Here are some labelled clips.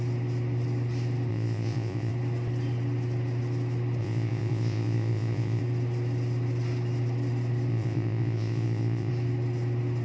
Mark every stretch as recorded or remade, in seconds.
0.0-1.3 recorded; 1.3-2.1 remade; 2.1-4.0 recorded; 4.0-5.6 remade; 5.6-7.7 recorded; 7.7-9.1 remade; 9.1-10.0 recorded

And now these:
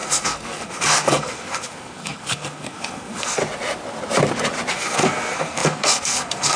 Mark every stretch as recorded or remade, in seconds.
0.0-3.4 remade; 3.4-4.7 recorded; 4.7-6.6 remade

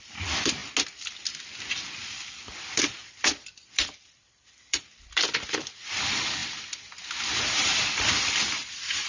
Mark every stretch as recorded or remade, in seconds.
0.0-0.6 remade; 0.6-2.1 recorded; 2.1-6.4 remade; 6.4-7.5 recorded; 7.5-9.1 remade